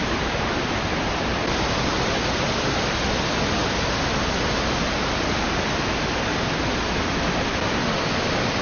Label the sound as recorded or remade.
recorded